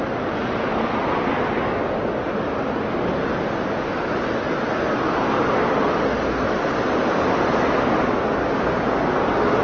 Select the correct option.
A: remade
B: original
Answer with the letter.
B